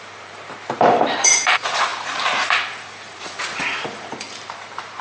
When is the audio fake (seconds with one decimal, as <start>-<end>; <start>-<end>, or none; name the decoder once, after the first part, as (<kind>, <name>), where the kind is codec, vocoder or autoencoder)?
0.0-5.0 (vocoder, BigVGAN v2)